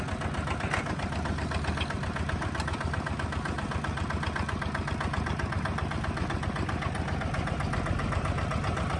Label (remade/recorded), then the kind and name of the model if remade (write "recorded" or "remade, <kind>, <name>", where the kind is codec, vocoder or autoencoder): recorded